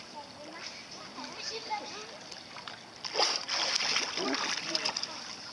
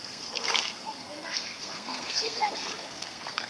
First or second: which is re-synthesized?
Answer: second